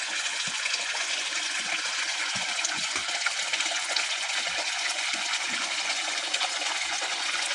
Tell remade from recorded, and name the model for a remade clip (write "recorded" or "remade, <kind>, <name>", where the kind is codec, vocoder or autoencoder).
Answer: remade, vocoder, Vocos